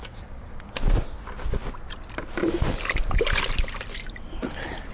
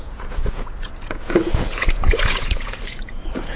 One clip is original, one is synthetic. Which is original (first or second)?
first